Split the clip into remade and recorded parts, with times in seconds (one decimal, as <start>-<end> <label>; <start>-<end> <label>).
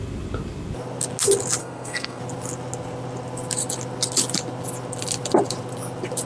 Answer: 0.0-1.6 recorded; 1.6-2.2 remade; 2.2-6.3 recorded